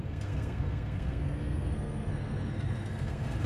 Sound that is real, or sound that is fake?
fake